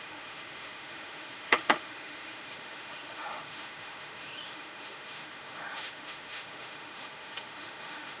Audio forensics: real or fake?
fake